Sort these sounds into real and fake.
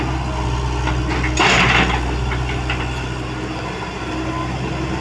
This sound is real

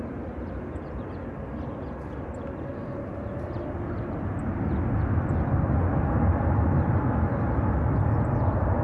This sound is real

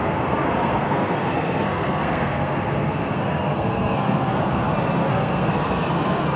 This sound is fake